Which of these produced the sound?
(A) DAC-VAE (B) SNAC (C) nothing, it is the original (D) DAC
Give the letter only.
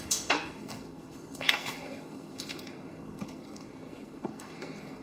B